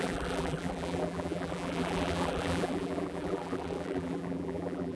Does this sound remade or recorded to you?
remade